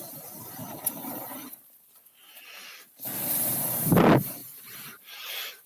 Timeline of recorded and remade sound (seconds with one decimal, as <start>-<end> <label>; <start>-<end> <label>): 0.0-4.4 recorded; 4.4-5.0 remade; 5.0-5.7 recorded